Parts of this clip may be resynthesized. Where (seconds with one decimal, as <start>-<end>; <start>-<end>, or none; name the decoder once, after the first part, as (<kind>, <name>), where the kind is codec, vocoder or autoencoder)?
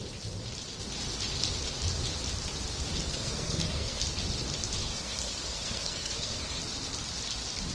3.0-4.0 (codec, SNAC); 4.9-6.6